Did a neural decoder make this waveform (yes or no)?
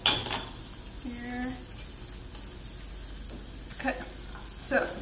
no